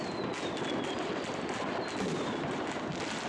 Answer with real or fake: real